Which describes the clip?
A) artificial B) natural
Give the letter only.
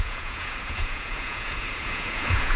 A